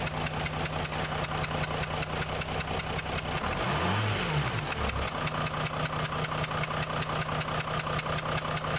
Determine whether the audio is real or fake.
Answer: real